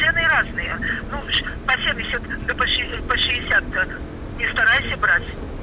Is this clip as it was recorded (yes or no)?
yes